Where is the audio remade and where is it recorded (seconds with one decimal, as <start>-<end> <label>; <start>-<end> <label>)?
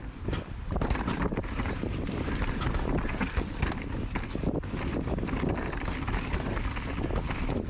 0.0-0.6 recorded; 0.6-3.0 remade; 3.0-7.7 recorded